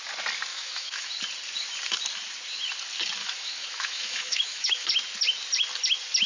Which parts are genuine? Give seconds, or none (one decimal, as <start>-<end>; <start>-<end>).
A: 0.0-0.5; 1.1-3.2; 4.9-6.3